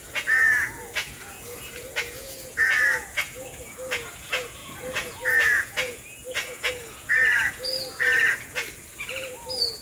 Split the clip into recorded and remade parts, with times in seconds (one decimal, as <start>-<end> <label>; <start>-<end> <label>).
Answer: 0.0-9.8 remade